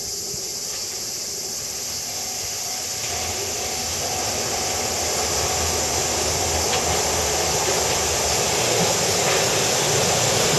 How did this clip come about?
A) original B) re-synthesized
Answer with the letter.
A